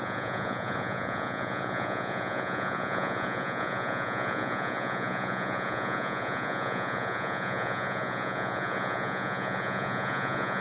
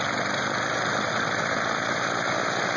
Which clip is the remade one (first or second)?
first